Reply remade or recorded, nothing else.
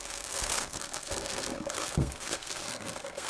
remade